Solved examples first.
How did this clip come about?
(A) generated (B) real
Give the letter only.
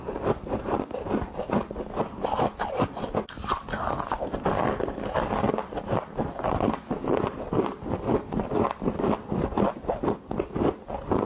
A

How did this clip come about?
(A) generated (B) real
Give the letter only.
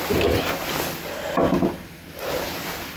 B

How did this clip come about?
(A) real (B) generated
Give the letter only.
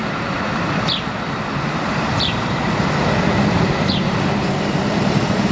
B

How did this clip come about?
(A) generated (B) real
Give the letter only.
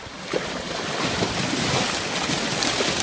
A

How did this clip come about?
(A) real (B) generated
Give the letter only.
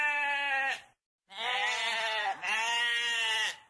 A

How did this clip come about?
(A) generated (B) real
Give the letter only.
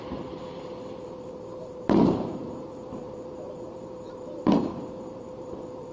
A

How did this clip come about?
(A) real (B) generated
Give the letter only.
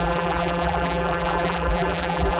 B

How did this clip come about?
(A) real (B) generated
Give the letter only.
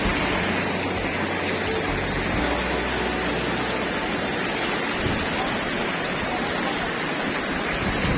A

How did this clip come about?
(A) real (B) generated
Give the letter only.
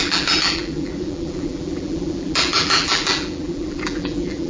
B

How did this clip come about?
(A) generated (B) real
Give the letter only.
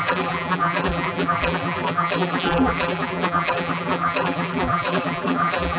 A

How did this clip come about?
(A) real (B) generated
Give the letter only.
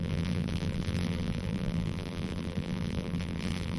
B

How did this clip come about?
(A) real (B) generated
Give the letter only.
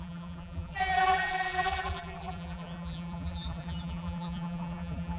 B